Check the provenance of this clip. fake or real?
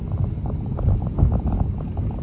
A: real